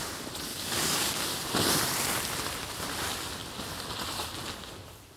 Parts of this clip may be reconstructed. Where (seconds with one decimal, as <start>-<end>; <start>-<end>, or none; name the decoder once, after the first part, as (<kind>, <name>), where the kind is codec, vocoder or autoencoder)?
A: 0.5-1.2 (codec, DAC)